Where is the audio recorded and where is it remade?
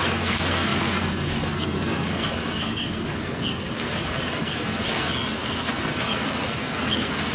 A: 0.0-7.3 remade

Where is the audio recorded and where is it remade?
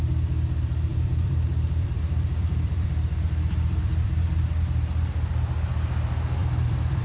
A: 0.0-0.9 recorded; 0.9-4.5 remade; 4.5-6.4 recorded; 6.4-7.0 remade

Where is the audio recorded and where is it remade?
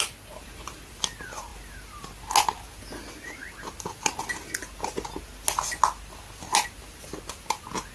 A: 0.0-7.9 recorded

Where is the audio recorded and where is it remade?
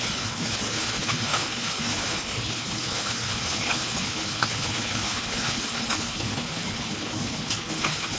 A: 0.0-8.2 remade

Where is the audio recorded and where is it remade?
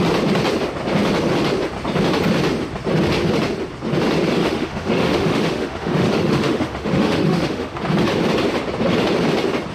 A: 0.0-4.4 recorded; 4.4-7.8 remade; 7.8-9.7 recorded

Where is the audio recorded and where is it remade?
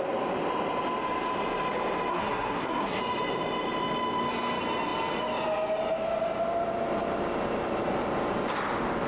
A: 0.0-2.1 recorded; 2.1-3.0 remade; 3.0-9.1 recorded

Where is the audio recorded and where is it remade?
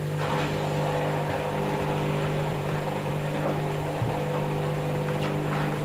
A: 0.0-2.5 recorded; 2.5-3.1 remade; 3.1-5.8 recorded